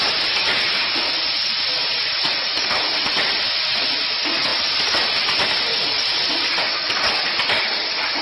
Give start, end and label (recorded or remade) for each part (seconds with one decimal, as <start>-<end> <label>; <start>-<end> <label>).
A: 0.0-8.2 recorded